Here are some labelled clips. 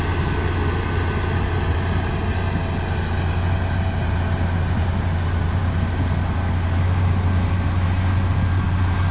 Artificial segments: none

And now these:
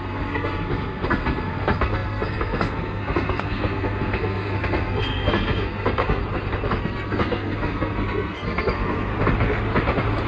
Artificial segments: 0.0-6.2 (codec, SNAC); 6.8-9.1

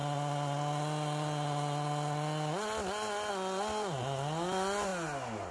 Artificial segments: none

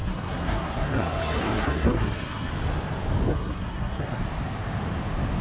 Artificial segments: 0.0-2.5 (codec, SNAC); 3.3-4.2

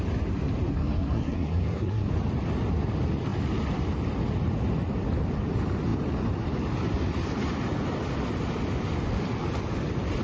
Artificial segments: 0.7-2.1 (codec, SNAC)

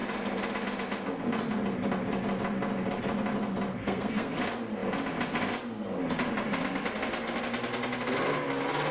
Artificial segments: 3.8-4.3 (codec, SNAC)

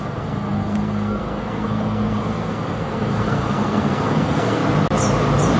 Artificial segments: 0.0-4.6 (codec, SNAC)

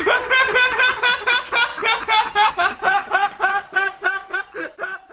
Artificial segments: 3.5-4.4 (codec, SNAC)